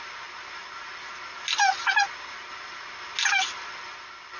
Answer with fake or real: real